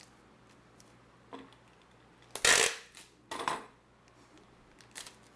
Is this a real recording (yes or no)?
yes